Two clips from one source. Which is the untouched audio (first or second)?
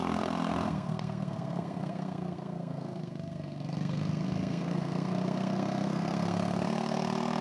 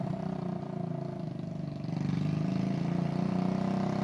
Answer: second